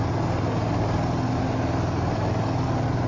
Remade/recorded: recorded